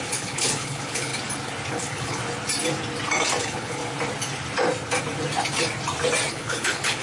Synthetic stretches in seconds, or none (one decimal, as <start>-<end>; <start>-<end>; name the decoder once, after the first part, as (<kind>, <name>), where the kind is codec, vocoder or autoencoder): 0.0-1.1 (codec, HILCodec); 1.7-2.2; 3.4-3.8; 6.3-7.0